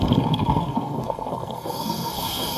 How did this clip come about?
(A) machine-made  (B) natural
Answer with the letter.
A